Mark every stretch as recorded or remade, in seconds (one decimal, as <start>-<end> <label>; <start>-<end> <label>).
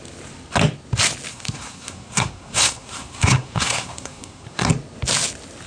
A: 0.0-1.3 recorded; 1.3-4.7 remade; 4.7-5.7 recorded